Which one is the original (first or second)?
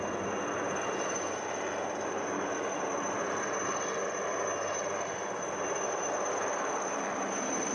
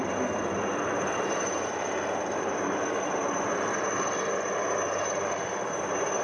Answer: first